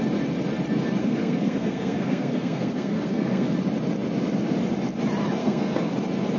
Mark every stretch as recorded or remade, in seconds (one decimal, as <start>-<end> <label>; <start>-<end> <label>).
0.0-1.0 recorded; 1.0-3.5 remade; 3.5-5.4 recorded; 5.4-5.9 remade; 5.9-6.4 recorded